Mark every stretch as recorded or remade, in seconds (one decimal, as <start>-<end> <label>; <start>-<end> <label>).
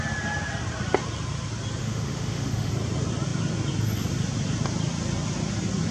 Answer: 0.0-1.8 recorded; 1.8-2.7 remade; 2.7-5.9 recorded